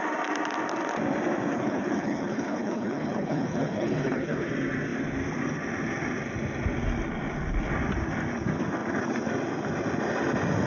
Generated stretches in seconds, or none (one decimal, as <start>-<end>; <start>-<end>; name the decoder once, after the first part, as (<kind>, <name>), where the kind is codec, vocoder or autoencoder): 1.5-4.5 (codec, HILCodec)